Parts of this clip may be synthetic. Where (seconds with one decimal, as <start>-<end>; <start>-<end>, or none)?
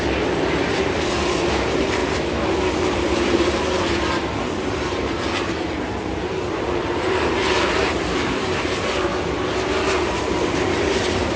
0.0-2.0; 2.7-9.1; 9.9-11.4